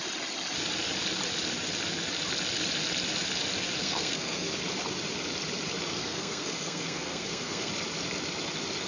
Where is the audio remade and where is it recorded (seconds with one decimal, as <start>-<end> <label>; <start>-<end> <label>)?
0.0-3.8 recorded; 3.8-4.6 remade; 4.6-5.9 recorded; 5.9-7.7 remade; 7.7-8.9 recorded